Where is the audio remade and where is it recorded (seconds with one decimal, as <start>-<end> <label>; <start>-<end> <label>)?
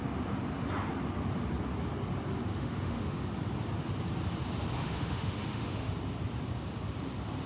0.0-2.5 recorded; 2.5-3.2 remade; 3.2-4.8 recorded; 4.8-5.9 remade; 5.9-7.5 recorded